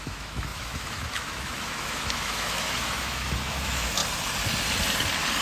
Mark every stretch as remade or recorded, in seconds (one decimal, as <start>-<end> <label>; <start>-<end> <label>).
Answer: 0.0-4.0 remade; 4.0-5.4 recorded